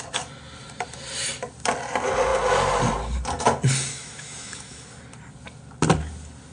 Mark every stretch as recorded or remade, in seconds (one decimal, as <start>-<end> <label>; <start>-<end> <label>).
0.0-3.9 recorded; 3.9-4.9 remade; 4.9-6.5 recorded